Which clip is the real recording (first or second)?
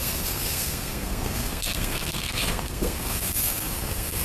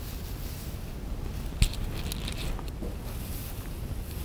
second